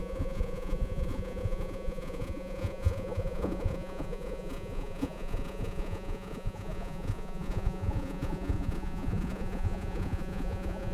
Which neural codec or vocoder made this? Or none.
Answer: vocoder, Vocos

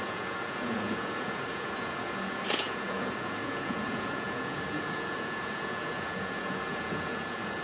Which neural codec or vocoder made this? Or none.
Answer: vocoder, Vocos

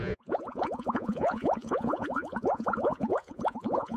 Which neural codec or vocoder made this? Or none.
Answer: vocoder, Vocos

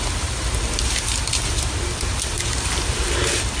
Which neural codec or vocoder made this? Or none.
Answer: none